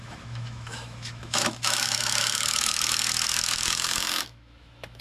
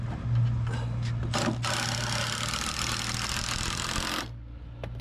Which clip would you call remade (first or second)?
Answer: first